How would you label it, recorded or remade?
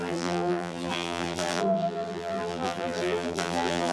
remade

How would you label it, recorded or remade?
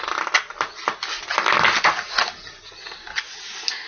recorded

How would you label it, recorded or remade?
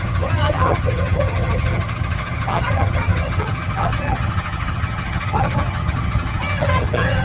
remade